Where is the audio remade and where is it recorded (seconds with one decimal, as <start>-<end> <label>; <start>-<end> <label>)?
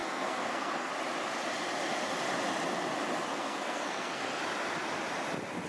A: 0.0-0.9 remade; 0.9-3.3 recorded; 3.3-4.4 remade; 4.4-5.7 recorded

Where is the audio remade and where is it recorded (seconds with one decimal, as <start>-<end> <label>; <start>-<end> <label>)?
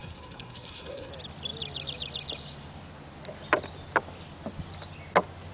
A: 0.0-1.1 remade; 1.1-5.5 recorded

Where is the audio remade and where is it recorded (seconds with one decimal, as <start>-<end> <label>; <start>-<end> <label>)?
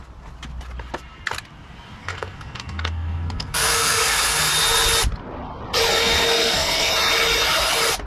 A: 0.0-2.0 recorded; 2.0-4.5 remade; 4.5-5.9 recorded; 5.9-6.9 remade; 6.9-8.1 recorded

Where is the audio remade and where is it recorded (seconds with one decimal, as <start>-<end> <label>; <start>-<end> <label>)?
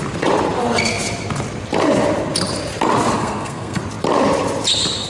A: 0.0-3.2 recorded; 3.2-3.8 remade; 3.8-5.1 recorded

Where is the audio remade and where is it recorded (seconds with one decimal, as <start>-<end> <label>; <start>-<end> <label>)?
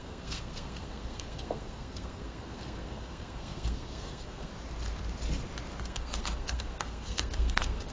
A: 0.0-4.5 remade; 4.5-5.8 recorded; 5.8-7.9 remade